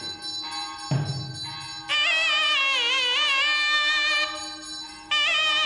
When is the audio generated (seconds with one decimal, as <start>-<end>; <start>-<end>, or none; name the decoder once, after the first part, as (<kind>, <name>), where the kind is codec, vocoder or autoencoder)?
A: none